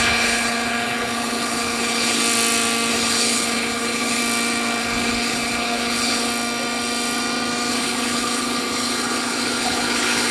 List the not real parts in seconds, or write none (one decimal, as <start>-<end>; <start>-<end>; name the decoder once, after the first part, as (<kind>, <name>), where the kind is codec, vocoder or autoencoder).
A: 0.0-2.2 (codec, HILCodec); 2.9-4.2; 4.8-6.3; 7.7-10.3